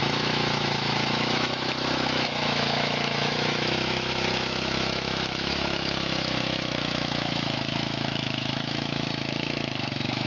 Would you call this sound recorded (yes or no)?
no